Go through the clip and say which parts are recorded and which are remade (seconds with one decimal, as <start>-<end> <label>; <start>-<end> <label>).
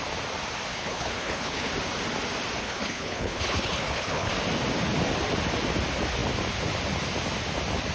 0.0-0.7 recorded; 0.7-1.7 remade; 1.7-2.6 recorded; 2.6-4.3 remade; 4.3-7.9 recorded